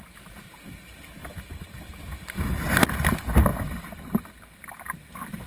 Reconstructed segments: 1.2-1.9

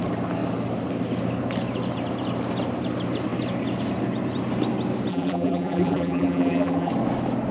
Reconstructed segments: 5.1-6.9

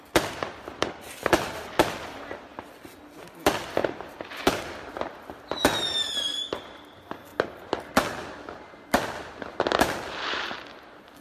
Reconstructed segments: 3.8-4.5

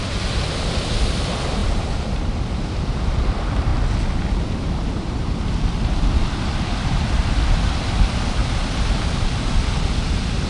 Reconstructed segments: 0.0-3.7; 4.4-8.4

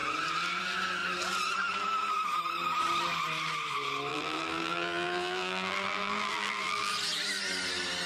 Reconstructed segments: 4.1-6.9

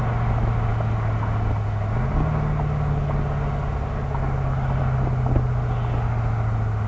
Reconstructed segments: none